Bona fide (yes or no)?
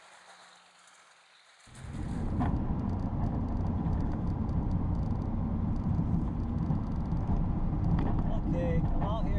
yes